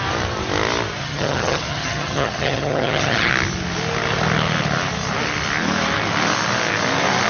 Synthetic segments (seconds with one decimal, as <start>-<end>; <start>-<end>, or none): 1.0-3.3

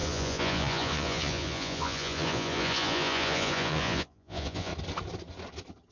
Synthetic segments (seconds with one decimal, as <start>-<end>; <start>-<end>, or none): 0.0-4.7

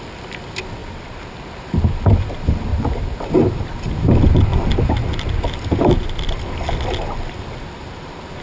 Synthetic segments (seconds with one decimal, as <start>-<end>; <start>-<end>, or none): 0.8-1.5; 2.7-3.3